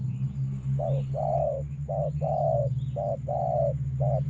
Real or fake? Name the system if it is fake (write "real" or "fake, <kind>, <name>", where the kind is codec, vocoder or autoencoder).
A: real